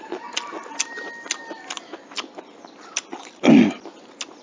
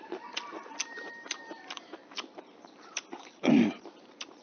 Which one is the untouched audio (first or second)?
first